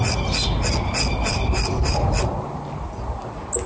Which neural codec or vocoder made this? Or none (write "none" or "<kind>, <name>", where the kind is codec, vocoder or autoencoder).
none